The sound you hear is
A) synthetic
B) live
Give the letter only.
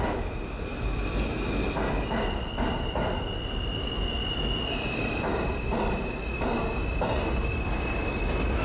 B